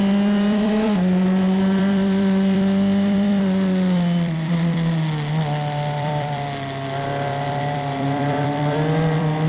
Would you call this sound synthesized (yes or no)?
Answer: yes